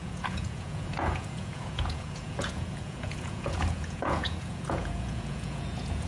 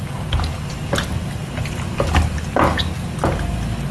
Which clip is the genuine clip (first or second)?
second